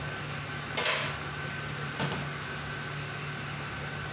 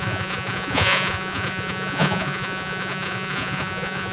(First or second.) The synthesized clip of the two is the second